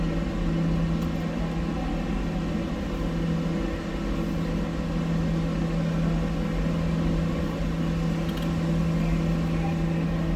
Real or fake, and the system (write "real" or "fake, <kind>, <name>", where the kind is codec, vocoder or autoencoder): real